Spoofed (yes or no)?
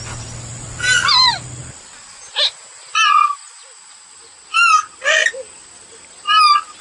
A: no